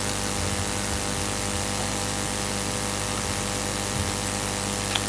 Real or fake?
real